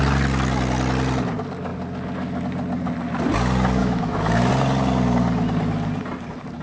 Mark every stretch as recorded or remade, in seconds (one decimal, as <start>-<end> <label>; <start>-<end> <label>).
0.0-3.8 recorded; 3.8-4.5 remade; 4.5-6.6 recorded